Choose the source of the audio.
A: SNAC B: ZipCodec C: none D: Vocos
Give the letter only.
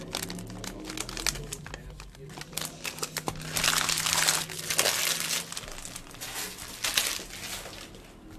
C